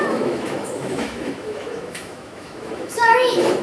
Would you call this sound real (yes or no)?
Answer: no